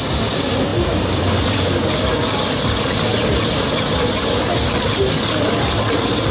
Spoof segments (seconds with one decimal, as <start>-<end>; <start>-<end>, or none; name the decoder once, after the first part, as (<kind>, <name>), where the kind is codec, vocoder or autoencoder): none